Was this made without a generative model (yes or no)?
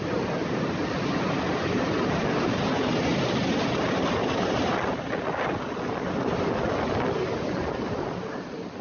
yes